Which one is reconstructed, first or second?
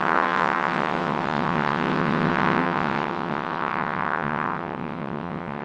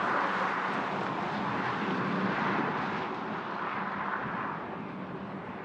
first